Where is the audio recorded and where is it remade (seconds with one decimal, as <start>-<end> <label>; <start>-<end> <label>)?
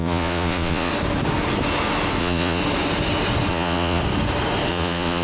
0.0-0.9 remade; 0.9-2.2 recorded; 2.2-2.6 remade; 2.6-3.5 recorded; 3.5-4.0 remade; 4.0-4.7 recorded; 4.7-5.2 remade